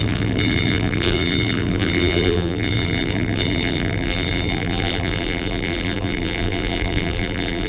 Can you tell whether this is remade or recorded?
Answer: remade